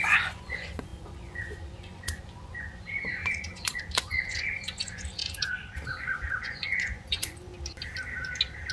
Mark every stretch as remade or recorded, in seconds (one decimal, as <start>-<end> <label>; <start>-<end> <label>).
0.0-7.5 remade; 7.5-8.7 recorded